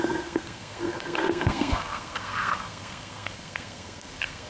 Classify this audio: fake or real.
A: fake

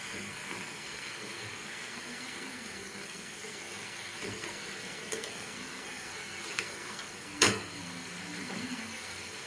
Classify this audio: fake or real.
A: fake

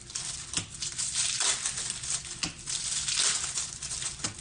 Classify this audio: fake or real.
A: fake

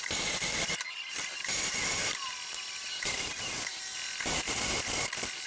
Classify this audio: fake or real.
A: real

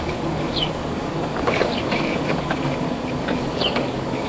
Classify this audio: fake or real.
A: fake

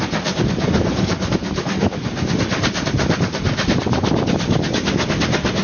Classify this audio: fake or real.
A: real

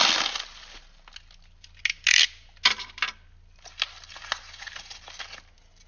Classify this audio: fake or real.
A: real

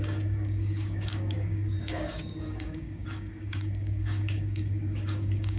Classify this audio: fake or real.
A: fake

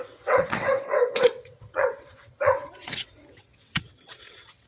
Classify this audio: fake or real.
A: fake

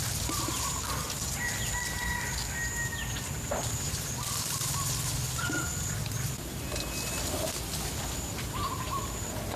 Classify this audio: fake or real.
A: real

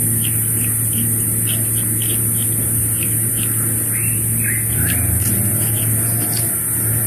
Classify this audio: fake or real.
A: real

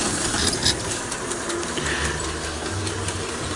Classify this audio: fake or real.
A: real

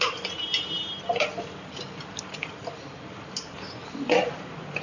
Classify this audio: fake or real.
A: real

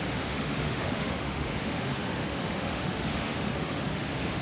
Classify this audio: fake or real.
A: fake